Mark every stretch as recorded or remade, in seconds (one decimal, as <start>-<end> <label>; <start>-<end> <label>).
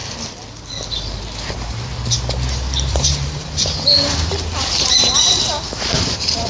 0.0-1.5 recorded; 1.5-1.9 remade; 1.9-2.9 recorded; 2.9-6.5 remade